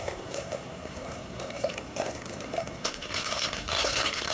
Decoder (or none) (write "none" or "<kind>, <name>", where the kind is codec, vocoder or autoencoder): codec, SNAC